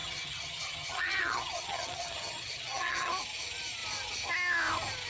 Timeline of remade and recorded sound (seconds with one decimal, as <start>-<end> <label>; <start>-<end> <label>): 0.0-3.1 remade; 3.1-5.1 recorded